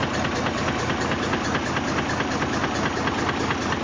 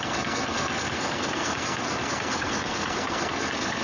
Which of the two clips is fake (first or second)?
second